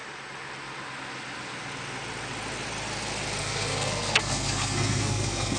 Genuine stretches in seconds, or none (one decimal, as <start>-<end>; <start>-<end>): 0.0-3.4